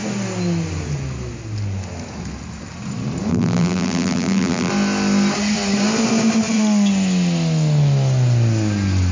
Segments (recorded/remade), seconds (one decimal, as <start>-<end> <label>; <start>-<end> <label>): 0.0-3.3 recorded; 3.3-4.7 remade; 4.7-9.1 recorded